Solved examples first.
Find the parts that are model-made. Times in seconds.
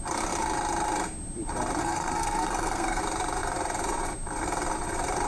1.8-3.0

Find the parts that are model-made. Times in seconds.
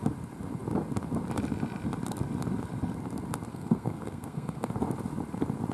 3.5-4.7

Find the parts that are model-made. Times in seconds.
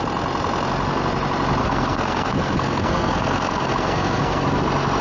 1.6-4.6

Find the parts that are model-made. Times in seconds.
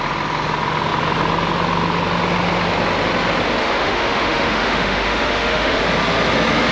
3.6-5.8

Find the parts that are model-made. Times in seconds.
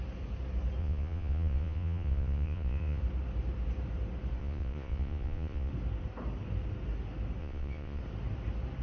0.8-3.0; 4.4-5.7; 7.4-8.0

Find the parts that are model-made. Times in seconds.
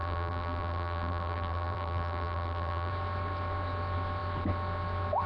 0.0-2.9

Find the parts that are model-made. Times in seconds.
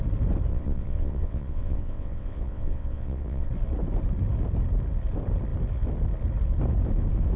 0.5-3.5